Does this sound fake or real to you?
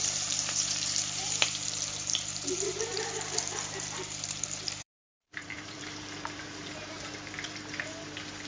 fake